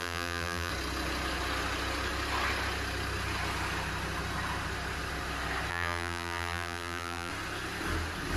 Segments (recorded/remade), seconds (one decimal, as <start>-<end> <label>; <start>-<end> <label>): 0.0-0.7 remade; 0.7-5.7 recorded; 5.7-7.3 remade; 7.3-8.4 recorded